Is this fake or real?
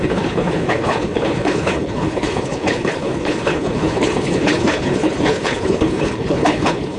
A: fake